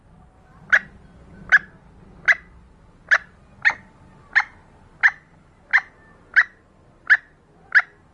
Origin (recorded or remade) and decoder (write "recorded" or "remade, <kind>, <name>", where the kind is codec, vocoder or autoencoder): recorded